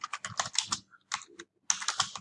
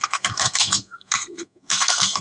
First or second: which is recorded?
first